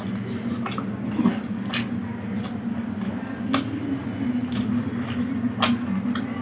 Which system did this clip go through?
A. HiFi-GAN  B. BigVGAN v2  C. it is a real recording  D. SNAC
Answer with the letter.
C